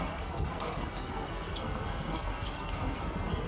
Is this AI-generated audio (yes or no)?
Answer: yes